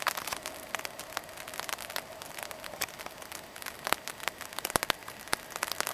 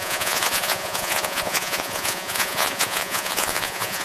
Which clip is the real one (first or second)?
first